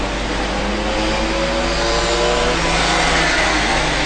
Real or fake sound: real